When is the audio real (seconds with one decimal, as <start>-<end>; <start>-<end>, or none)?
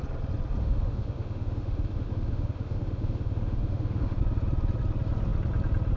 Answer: 0.0-0.6; 4.2-6.0